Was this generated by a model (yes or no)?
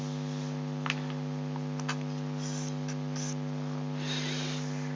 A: no